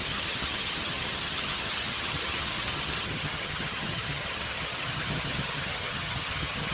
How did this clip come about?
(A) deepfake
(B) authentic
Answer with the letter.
A